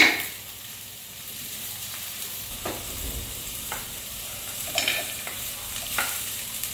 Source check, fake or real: fake